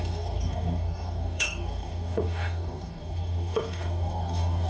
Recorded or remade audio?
remade